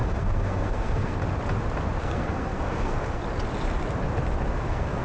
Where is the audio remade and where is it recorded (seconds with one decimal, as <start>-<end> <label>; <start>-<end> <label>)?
0.0-1.2 remade; 1.2-2.0 recorded; 2.0-3.2 remade; 3.2-4.5 recorded; 4.5-5.0 remade